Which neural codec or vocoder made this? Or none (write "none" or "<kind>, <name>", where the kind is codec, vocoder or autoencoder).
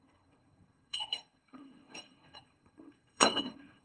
codec, SNAC